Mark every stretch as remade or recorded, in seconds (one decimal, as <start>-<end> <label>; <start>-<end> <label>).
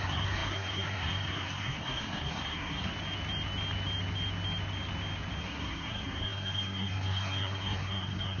0.0-2.9 remade; 2.9-5.4 recorded; 5.4-8.4 remade